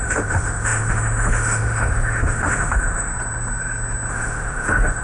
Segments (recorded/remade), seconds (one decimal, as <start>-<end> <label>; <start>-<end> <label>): 0.0-3.1 remade; 3.1-4.1 recorded; 4.1-5.0 remade